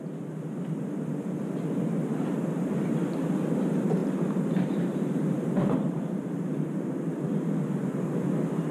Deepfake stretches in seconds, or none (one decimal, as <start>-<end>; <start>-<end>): 0.0-8.7